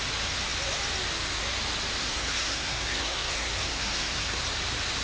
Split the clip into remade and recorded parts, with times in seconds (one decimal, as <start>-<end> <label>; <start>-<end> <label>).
0.0-2.0 recorded; 2.0-4.4 remade; 4.4-5.0 recorded